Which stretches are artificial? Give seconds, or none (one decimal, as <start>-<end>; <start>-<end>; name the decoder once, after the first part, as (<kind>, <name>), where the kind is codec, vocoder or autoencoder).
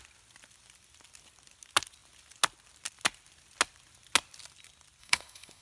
5.0-5.6 (codec, SNAC)